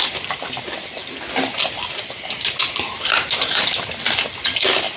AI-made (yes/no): no